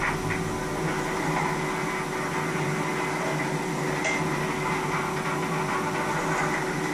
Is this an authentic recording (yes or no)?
yes